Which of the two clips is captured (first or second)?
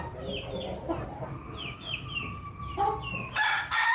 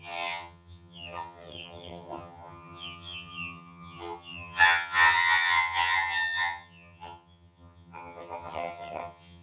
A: first